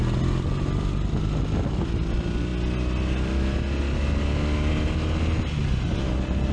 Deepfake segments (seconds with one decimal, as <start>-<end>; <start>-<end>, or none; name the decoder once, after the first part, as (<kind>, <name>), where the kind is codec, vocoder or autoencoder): none